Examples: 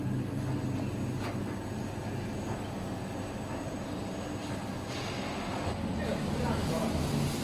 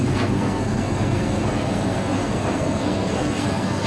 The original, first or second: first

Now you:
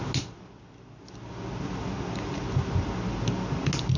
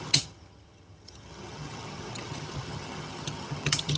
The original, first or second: first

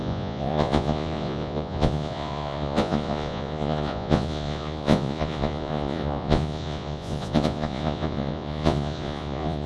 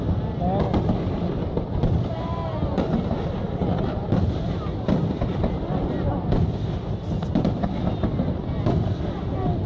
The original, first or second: second